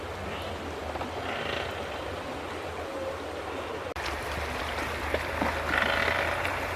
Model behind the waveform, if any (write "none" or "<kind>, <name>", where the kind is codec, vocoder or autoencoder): none